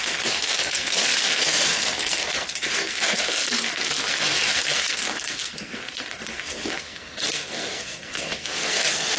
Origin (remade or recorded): remade